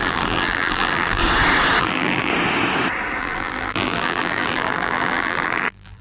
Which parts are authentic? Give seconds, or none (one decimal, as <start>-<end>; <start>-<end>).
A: 1.2-1.8; 2.3-3.2